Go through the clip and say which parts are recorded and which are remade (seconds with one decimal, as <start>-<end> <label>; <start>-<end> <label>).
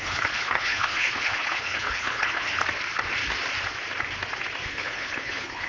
0.0-2.5 remade; 2.5-4.7 recorded; 4.7-5.7 remade